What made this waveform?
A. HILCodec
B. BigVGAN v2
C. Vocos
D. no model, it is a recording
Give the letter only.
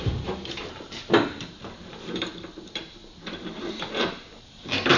B